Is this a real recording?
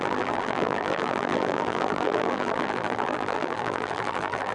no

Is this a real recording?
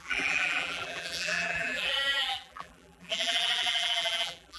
no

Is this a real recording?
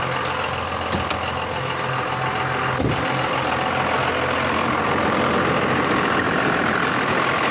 yes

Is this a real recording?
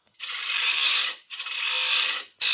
yes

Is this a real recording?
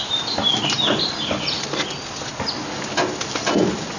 yes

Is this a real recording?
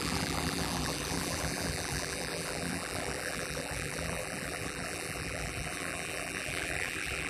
no